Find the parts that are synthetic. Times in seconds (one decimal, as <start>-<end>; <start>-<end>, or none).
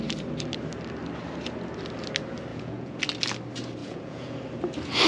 2.5-3.0; 3.8-4.4